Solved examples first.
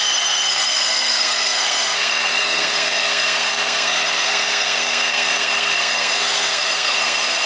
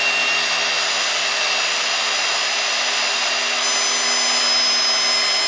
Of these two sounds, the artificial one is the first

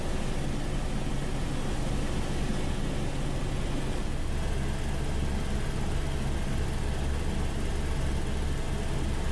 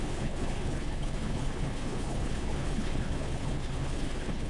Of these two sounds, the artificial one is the second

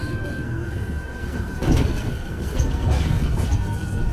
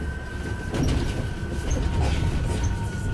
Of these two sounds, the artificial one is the first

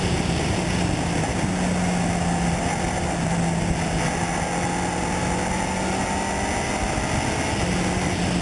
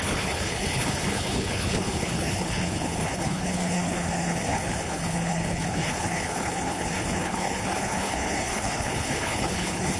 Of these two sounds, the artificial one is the second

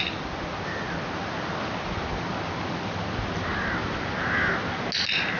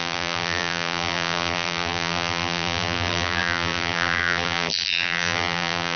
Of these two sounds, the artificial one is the second